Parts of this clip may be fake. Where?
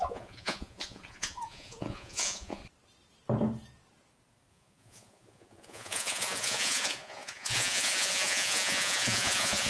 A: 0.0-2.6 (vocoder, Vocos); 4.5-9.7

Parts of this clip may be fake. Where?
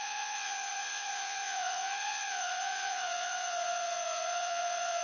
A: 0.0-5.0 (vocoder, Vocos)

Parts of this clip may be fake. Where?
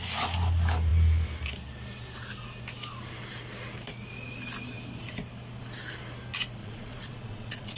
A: 6.6-7.8 (vocoder, Vocos)